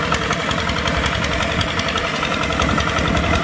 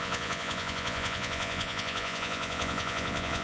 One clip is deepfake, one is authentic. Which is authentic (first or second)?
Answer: first